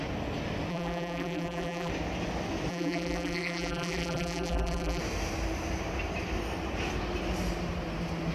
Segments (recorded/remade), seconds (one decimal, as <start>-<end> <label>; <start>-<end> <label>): 0.0-0.7 recorded; 0.7-1.9 remade; 1.9-2.7 recorded; 2.7-5.0 remade; 5.0-8.3 recorded